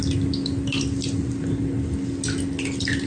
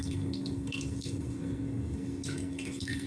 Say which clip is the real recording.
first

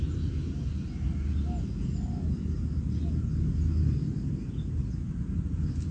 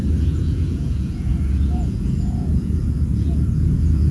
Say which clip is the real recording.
first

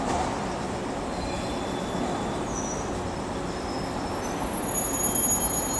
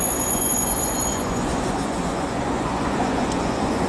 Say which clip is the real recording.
first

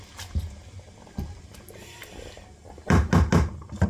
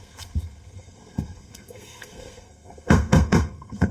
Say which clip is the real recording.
first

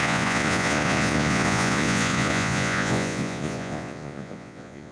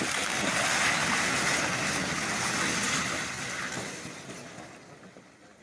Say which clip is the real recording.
second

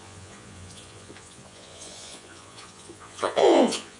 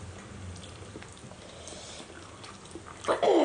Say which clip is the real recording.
second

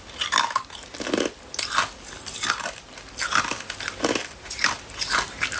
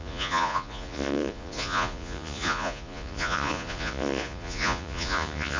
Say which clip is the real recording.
first